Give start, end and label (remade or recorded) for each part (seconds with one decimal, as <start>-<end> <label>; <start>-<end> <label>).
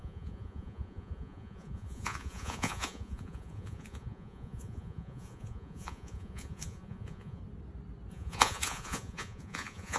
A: 0.0-7.4 remade; 7.4-8.1 recorded; 8.1-10.0 remade